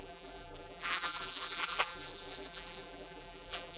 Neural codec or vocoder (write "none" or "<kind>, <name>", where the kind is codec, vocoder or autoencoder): vocoder, BigVGAN v2